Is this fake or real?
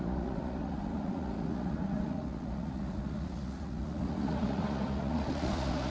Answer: fake